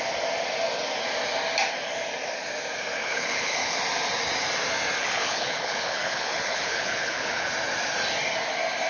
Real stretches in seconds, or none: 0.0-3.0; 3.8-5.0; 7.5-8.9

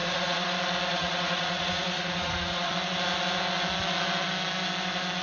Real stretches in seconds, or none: 0.5-0.9; 2.7-5.2

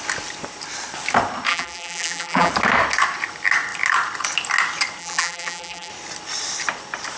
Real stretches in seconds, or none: 0.0-1.5; 2.5-5.0; 5.9-7.2

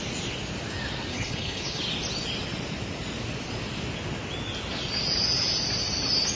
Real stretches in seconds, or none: 0.0-1.1; 1.8-6.3

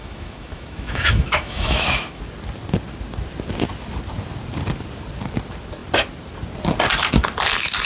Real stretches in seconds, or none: 2.2-7.8

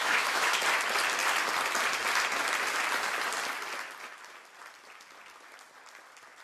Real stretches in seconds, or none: 0.6-6.4